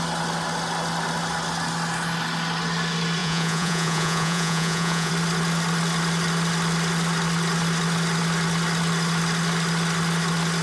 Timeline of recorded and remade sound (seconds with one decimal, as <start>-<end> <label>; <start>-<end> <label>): 0.0-3.2 recorded; 3.2-5.1 remade; 5.1-10.6 recorded